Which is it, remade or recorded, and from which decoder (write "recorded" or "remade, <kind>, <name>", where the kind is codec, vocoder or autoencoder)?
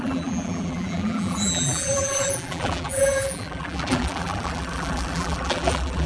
remade, vocoder, BigVGAN v2